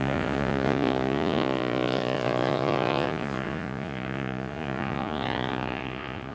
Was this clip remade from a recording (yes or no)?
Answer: yes